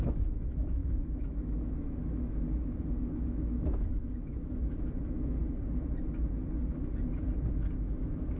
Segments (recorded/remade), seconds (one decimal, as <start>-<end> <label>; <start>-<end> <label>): 0.0-5.4 remade; 5.4-7.5 recorded; 7.5-8.4 remade